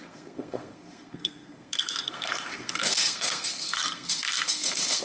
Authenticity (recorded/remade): remade